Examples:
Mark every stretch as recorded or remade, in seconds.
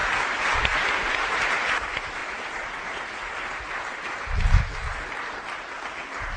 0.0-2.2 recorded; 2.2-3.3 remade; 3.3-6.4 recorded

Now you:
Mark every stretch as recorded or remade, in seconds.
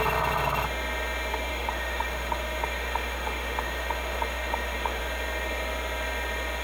0.0-1.5 recorded; 1.5-5.0 remade; 5.0-6.6 recorded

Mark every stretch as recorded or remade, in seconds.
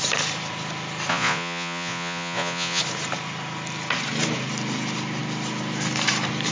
0.0-1.1 recorded; 1.1-2.8 remade; 2.8-6.5 recorded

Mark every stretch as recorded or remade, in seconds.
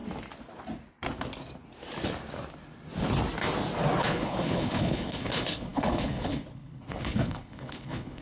0.0-4.0 recorded; 4.0-8.2 remade